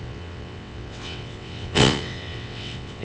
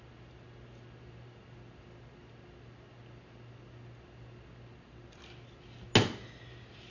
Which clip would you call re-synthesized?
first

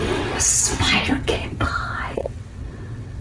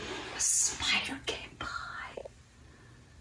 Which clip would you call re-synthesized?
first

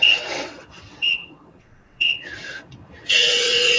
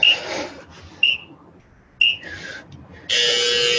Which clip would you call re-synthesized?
first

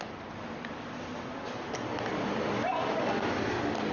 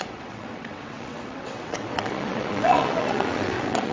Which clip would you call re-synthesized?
second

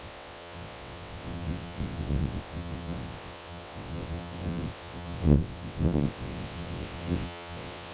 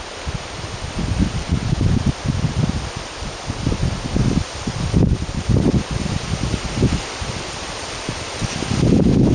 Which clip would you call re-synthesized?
first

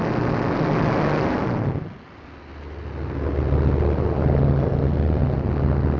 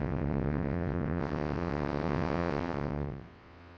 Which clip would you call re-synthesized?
second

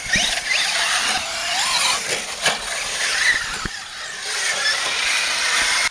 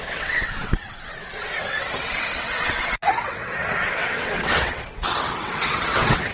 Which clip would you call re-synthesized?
second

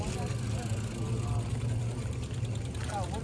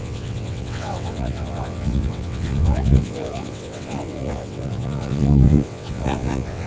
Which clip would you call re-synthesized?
second